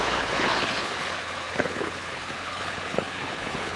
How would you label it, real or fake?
fake